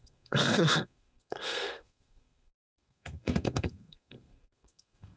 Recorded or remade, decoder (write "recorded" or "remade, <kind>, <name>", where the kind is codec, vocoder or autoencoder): remade, codec, SNAC